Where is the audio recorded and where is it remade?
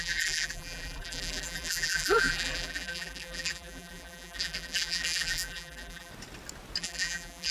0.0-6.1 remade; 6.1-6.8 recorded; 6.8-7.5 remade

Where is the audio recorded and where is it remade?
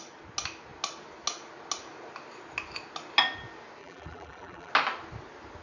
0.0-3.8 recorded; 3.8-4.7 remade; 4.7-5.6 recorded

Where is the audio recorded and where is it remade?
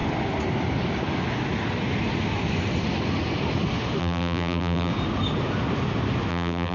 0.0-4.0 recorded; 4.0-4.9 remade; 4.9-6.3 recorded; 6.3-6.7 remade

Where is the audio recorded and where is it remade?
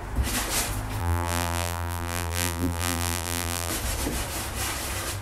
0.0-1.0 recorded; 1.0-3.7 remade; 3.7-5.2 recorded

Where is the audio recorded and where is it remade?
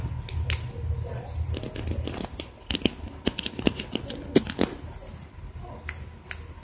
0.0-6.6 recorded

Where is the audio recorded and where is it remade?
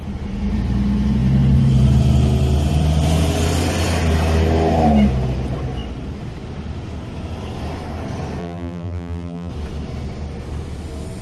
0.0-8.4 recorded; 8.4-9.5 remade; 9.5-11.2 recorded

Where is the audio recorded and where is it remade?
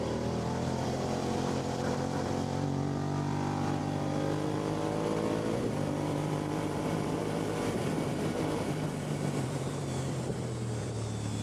0.0-3.8 remade; 3.8-5.6 recorded; 5.6-11.4 remade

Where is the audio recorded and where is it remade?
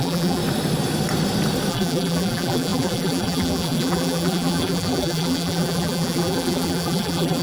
0.0-0.4 remade; 0.4-1.7 recorded; 1.7-7.4 remade